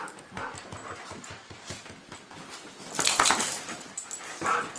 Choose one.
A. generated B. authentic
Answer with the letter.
B